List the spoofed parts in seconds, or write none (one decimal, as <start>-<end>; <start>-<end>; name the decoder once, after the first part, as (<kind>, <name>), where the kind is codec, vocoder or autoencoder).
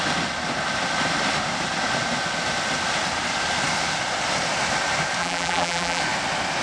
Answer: 5.2-6.0 (vocoder, BigVGAN v2)